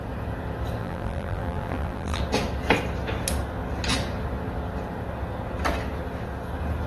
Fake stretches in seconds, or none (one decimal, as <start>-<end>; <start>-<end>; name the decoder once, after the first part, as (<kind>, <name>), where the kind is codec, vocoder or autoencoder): 0.8-2.2 (vocoder, BigVGAN v2)